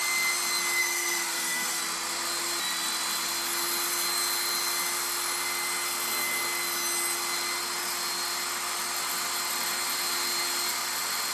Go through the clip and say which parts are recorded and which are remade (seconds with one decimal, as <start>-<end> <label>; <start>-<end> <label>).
0.0-0.8 recorded; 0.8-1.8 remade; 1.8-11.3 recorded